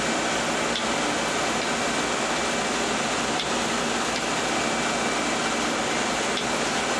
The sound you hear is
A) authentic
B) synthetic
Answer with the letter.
A